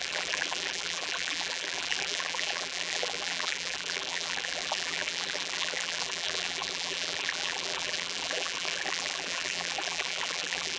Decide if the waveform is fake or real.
fake